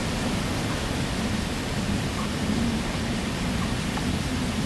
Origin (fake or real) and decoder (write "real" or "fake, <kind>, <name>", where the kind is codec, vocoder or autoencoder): real